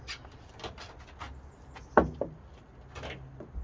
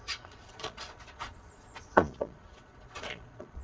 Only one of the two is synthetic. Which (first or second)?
second